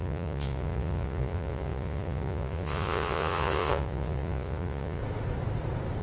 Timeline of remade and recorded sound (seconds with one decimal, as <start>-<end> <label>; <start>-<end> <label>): 0.0-5.0 remade; 5.0-6.0 recorded